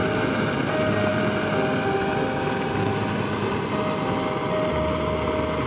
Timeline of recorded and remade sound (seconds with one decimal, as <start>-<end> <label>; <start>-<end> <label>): 0.0-5.7 recorded